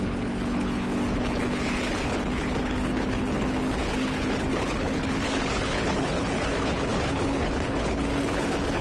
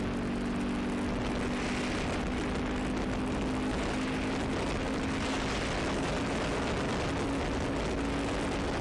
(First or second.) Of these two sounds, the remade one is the first